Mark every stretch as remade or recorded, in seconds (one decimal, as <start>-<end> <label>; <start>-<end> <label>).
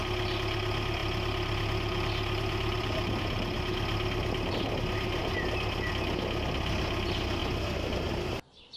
0.0-1.0 recorded; 1.0-4.5 remade; 4.5-7.4 recorded; 7.4-8.1 remade; 8.1-8.8 recorded